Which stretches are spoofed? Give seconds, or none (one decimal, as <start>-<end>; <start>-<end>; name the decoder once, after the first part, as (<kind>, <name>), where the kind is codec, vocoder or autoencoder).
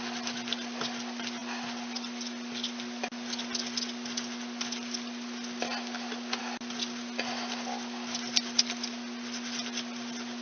none